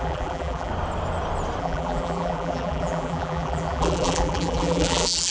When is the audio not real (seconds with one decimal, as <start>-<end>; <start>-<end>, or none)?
0.0-0.7; 1.6-5.3